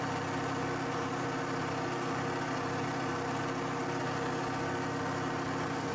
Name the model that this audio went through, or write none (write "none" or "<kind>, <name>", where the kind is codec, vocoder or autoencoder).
none